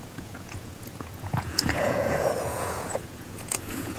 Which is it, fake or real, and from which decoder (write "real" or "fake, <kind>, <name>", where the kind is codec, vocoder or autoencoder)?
fake, vocoder, Vocos